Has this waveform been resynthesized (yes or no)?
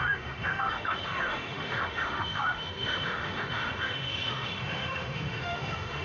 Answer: yes